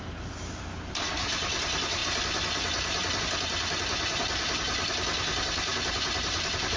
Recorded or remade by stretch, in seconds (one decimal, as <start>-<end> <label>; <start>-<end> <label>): 0.0-5.7 recorded; 5.7-6.8 remade